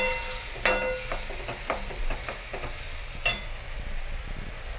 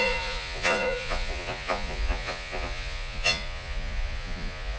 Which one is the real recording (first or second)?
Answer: first